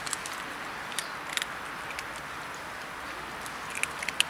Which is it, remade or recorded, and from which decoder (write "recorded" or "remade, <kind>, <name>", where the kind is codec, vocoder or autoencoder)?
recorded